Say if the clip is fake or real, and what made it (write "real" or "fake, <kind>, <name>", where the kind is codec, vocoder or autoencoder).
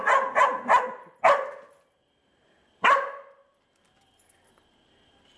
real